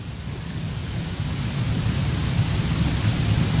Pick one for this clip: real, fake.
real